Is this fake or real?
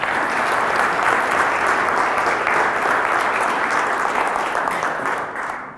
real